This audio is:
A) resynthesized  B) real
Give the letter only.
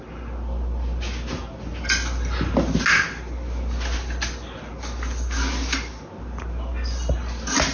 B